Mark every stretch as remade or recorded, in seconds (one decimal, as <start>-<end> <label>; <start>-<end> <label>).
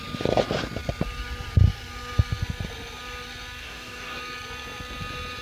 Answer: 0.0-3.6 recorded; 3.6-4.2 remade; 4.2-5.4 recorded